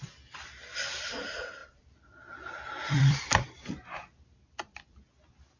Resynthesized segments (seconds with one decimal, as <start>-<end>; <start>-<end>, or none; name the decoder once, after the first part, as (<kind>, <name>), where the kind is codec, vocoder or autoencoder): 1.6-3.7 (vocoder, BigVGAN v2)